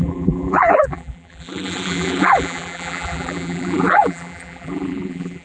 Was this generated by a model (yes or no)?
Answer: yes